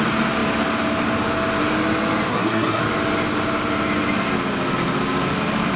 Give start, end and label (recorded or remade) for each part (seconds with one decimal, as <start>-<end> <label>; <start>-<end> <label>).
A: 0.0-2.3 recorded; 2.3-2.8 remade; 2.8-5.8 recorded